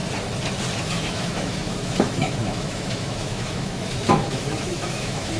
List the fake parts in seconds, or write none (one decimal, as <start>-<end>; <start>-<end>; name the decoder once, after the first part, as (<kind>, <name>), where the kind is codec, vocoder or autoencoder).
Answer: 0.8-5.4 (autoencoder, DAC-VAE)